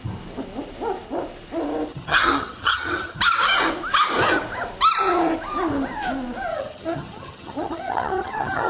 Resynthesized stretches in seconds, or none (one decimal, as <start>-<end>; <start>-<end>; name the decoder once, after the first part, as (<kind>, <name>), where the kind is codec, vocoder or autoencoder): 1.9-3.2 (vocoder, HiFi-GAN); 6.5-8.7